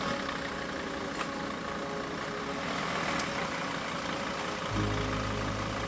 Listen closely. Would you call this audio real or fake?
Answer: real